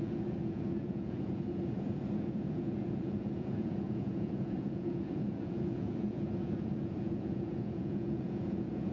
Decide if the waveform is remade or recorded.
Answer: remade